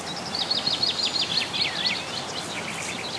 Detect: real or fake real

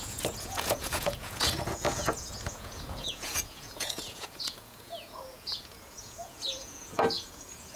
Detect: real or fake fake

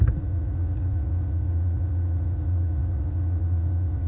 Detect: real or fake fake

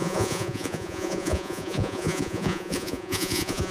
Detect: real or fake fake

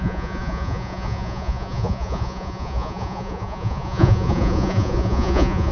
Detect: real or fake fake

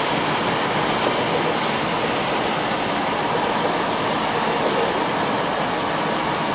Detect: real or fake real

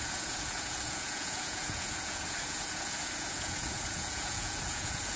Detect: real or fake fake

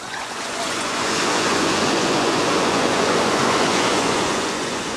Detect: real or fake fake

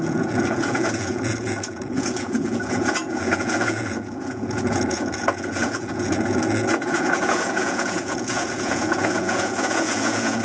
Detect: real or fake fake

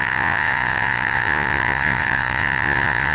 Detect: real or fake fake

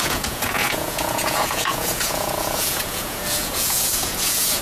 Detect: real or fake fake